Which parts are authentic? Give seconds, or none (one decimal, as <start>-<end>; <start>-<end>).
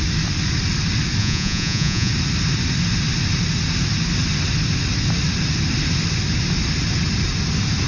0.0-1.2; 2.1-7.9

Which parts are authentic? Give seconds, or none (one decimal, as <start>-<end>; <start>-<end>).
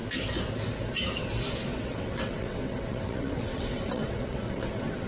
0.0-1.7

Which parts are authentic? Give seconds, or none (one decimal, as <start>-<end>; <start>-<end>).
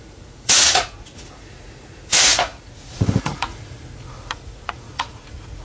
none